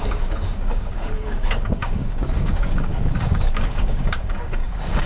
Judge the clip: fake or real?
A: fake